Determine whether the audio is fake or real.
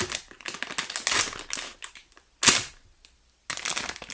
real